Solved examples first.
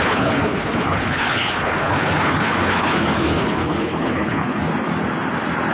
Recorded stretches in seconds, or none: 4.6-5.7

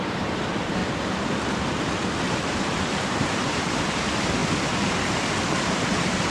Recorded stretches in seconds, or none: 0.8-2.3; 4.4-5.6

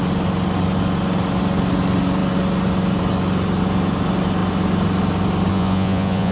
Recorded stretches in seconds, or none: 0.0-5.5

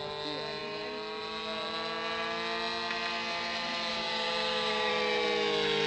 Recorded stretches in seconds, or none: 0.0-3.9; 4.9-5.9